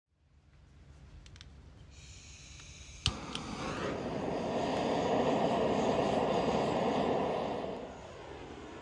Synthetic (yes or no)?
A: no